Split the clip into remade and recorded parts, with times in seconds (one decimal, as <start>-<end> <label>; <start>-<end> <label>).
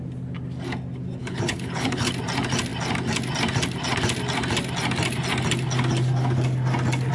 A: 0.0-1.2 recorded; 1.2-2.1 remade; 2.1-7.1 recorded